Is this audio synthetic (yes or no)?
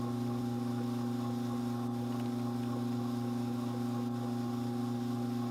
no